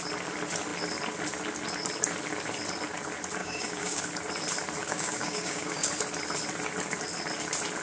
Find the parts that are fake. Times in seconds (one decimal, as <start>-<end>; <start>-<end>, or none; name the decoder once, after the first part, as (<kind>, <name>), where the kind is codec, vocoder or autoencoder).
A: 3.4-4.0 (codec, DAC); 4.8-5.9

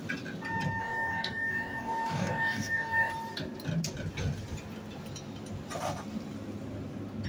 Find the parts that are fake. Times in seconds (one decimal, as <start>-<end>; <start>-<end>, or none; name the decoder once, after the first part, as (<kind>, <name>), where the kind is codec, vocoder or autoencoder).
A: 0.8-3.1 (codec, DAC)

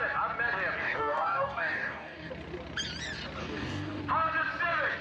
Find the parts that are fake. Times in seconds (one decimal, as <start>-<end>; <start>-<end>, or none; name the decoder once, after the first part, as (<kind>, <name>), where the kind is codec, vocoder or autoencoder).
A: 0.8-2.3 (codec, DAC); 3.4-4.0

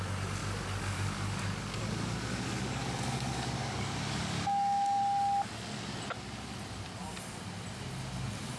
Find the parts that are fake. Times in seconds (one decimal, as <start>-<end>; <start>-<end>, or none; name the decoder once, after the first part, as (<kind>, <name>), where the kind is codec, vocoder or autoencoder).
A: 0.4-5.0 (codec, DAC)

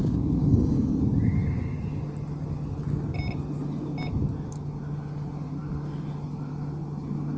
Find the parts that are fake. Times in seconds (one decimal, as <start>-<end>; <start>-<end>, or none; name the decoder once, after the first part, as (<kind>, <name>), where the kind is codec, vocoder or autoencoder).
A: 0.5-1.0 (codec, DAC)

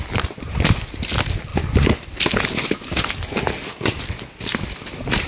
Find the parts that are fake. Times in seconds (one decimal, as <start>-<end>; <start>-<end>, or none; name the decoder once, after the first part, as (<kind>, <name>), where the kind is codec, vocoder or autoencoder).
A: none